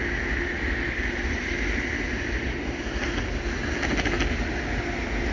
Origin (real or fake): real